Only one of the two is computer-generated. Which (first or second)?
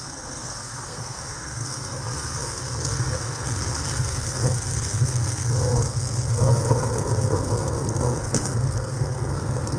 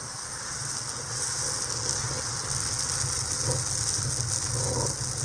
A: first